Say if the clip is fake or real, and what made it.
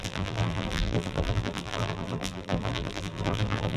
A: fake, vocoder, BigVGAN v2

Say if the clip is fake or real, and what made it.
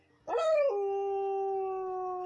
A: real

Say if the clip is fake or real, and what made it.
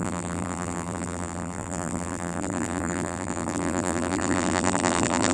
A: fake, vocoder, BigVGAN v2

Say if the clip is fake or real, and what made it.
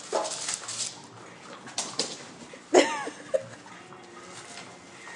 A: real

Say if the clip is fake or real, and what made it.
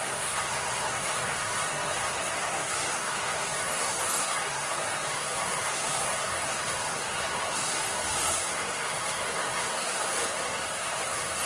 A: fake, codec, SNAC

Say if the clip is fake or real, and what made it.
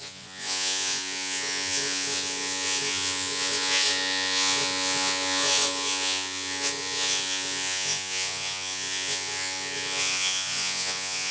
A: fake, vocoder, Vocos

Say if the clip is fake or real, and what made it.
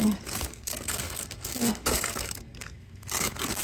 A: fake, codec, SNAC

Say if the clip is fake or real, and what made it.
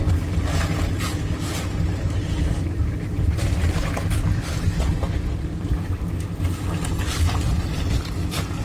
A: real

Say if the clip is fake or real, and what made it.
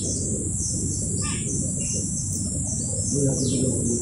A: fake, vocoder, BigVGAN v2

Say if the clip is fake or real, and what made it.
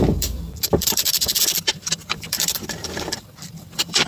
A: fake, vocoder, BigVGAN v2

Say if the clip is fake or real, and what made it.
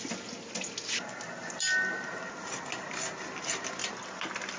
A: real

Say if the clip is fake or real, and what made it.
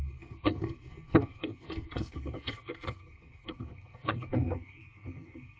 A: fake, codec, SNAC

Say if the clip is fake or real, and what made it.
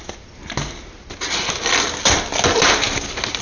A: real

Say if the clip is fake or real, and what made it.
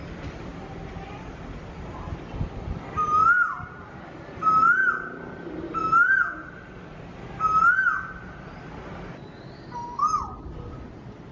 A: real